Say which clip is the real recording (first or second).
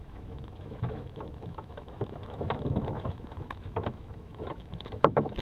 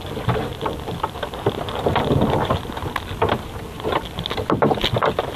second